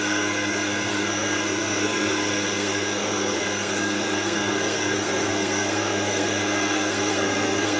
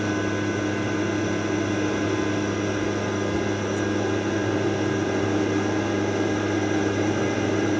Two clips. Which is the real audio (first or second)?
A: second